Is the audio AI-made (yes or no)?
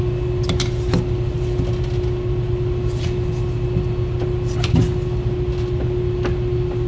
no